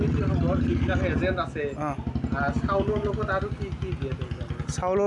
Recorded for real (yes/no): yes